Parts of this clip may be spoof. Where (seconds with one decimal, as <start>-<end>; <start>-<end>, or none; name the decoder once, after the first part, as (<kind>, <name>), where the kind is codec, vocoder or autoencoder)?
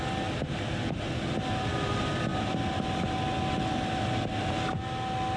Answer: none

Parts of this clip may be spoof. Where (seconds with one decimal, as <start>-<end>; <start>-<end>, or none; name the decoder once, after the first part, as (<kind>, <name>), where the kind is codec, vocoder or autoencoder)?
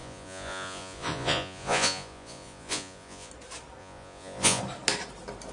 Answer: 0.0-3.3 (vocoder, Vocos); 3.8-4.6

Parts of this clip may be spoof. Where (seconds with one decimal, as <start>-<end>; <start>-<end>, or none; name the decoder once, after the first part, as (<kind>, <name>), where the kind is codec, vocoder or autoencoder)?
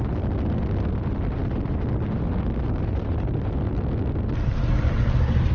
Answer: none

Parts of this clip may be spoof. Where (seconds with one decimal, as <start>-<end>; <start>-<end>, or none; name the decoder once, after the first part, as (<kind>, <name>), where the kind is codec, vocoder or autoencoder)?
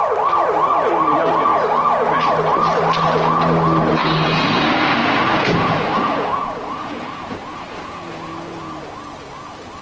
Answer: 4.0-8.8 (vocoder, Vocos)